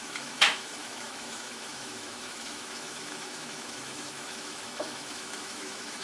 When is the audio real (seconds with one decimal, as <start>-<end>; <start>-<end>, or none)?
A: none